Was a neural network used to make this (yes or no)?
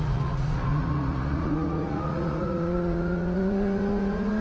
yes